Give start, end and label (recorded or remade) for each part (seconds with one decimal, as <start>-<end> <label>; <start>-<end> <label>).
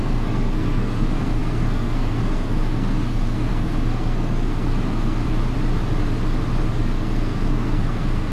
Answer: 0.0-5.2 remade; 5.2-6.7 recorded; 6.7-8.3 remade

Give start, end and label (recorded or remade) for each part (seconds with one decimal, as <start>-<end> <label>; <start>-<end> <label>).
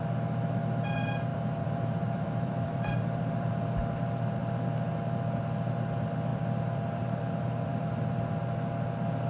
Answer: 0.0-1.3 recorded; 1.3-3.5 remade; 3.5-6.3 recorded; 6.3-8.2 remade; 8.2-9.3 recorded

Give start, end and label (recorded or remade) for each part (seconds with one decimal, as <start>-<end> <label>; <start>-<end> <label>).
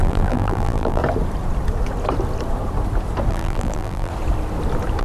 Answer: 0.0-1.0 remade; 1.0-3.3 recorded; 3.3-4.1 remade; 4.1-5.0 recorded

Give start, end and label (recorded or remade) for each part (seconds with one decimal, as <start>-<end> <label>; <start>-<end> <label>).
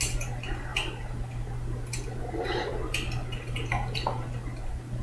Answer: 0.0-5.0 recorded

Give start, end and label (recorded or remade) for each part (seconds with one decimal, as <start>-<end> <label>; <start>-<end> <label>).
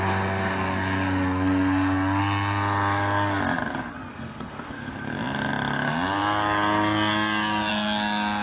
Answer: 0.0-4.1 recorded; 4.1-4.9 remade; 4.9-8.4 recorded